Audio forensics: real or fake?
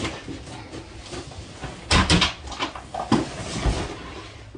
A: real